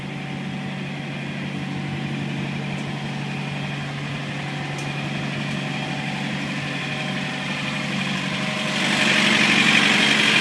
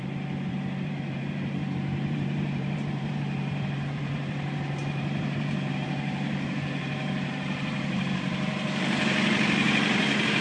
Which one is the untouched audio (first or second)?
first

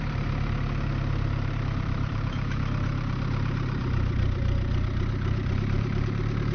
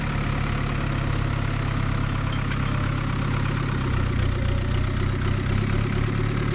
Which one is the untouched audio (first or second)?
second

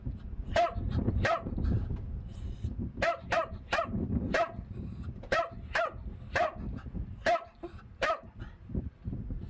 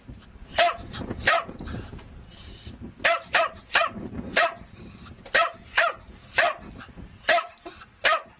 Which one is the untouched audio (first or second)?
first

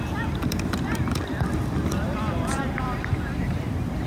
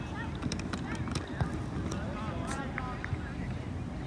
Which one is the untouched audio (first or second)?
second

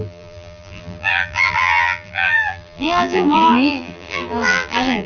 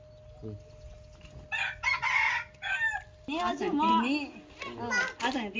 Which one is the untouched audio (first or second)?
second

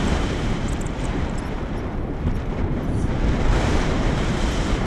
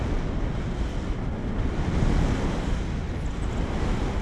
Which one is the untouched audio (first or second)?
second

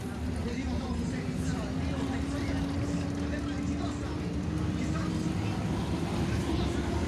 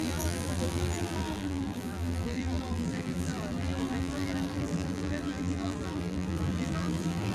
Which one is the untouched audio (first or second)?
first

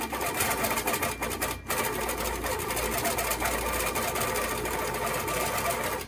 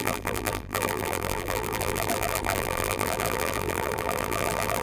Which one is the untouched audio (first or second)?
first